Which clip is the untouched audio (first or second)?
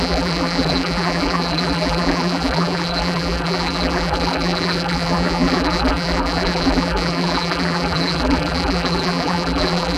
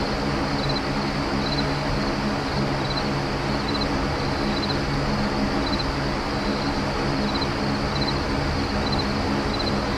second